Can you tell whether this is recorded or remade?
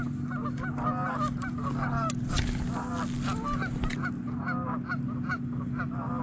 recorded